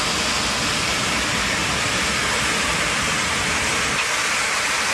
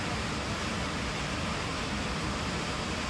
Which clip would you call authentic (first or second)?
first